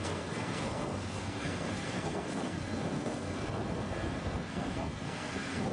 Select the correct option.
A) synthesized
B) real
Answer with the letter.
A